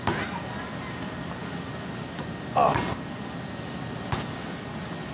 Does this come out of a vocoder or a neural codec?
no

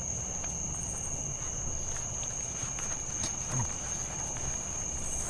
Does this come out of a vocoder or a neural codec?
no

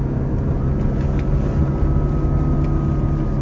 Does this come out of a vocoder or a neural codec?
no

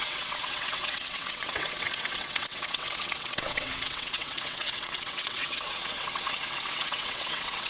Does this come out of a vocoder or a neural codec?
yes